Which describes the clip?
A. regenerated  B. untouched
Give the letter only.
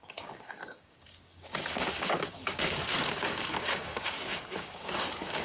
A